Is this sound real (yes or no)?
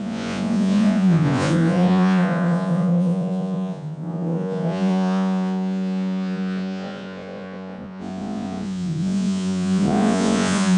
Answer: no